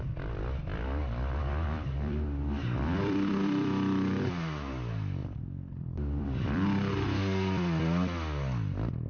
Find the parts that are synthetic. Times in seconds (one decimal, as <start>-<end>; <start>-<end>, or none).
0.7-4.3; 5.2-6.9